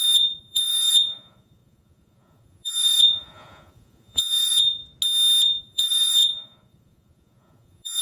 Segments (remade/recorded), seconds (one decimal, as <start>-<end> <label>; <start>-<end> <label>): 0.0-4.8 remade; 4.8-5.6 recorded; 5.6-8.0 remade